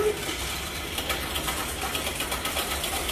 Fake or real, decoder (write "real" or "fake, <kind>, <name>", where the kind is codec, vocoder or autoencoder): fake, vocoder, BigVGAN v2